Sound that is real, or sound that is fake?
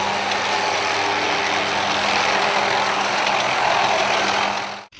real